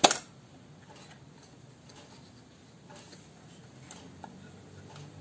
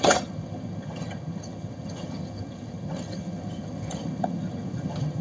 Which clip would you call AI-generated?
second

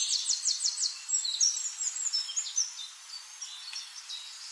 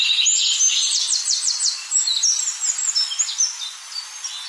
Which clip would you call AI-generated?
first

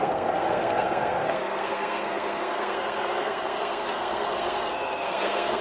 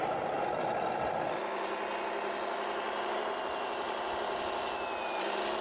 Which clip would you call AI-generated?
first